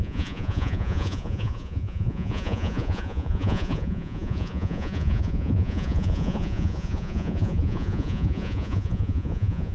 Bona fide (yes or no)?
no